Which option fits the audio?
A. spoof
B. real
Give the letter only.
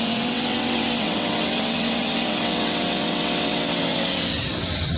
A